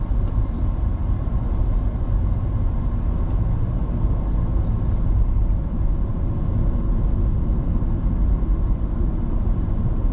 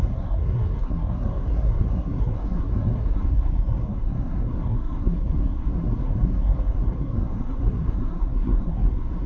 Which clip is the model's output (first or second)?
second